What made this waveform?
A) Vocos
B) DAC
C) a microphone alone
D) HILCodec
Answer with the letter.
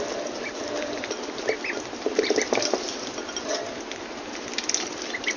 C